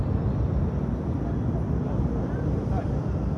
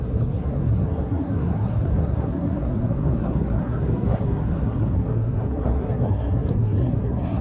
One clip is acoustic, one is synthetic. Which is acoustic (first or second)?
first